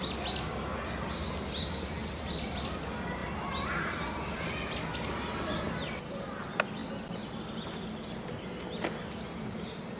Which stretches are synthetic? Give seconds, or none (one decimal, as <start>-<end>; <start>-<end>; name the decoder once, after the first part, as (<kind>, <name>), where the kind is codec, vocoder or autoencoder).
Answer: none